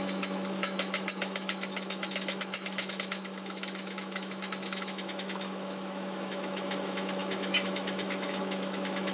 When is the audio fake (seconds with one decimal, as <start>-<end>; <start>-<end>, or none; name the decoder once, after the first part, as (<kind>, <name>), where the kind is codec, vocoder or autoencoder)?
0.0-9.1 (autoencoder, DAC-VAE)